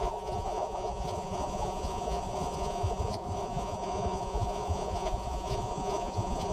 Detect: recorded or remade remade